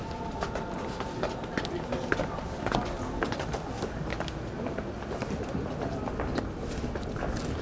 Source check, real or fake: real